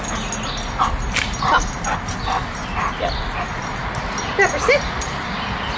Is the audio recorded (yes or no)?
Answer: yes